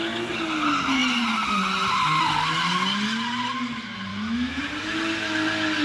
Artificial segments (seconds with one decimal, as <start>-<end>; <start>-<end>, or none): 4.1-4.6